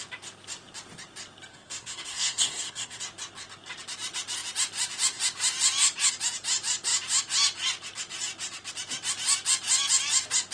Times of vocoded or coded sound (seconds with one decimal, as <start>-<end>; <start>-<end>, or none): 1.5-3.0